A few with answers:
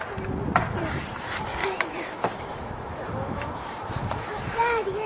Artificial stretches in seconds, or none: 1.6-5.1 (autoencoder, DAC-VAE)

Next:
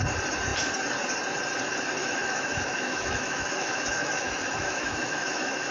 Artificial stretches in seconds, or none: 2.0-5.7 (autoencoder, DAC-VAE)

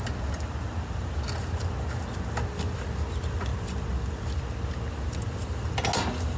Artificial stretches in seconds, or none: none

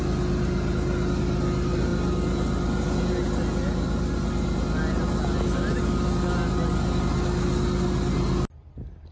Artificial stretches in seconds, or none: none

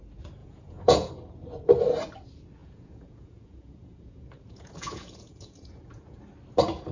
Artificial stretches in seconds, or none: 0.4-1.1 (vocoder, Vocos); 2.6-6.2

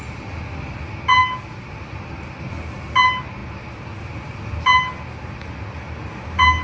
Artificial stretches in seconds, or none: none